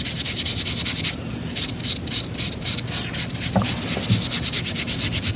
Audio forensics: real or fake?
real